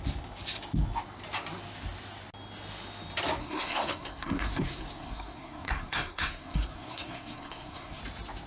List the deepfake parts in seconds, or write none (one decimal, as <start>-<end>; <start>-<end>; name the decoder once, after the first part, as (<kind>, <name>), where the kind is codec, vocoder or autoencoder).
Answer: 3.4-8.0 (codec, SNAC)

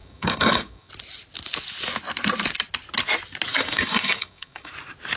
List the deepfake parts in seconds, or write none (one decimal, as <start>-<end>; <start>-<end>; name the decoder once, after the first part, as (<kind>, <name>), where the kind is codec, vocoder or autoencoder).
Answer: 0.0-0.9 (codec, DAC); 3.5-4.7

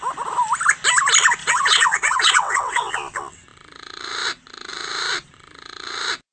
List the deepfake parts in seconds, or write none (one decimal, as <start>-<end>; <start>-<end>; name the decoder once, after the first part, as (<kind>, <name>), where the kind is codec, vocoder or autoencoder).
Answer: 1.4-2.9 (vocoder, WaveNeXt)

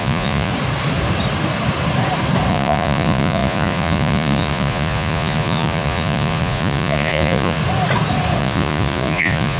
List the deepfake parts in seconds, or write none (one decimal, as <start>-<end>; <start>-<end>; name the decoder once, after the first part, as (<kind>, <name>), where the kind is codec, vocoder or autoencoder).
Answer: 0.0-0.5 (vocoder, Vocos); 2.5-7.6; 8.4-9.6